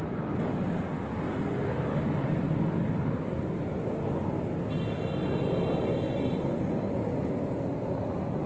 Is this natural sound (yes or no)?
yes